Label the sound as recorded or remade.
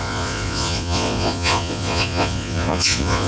remade